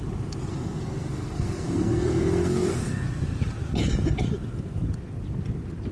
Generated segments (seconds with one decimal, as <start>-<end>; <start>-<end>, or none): 0.5-3.2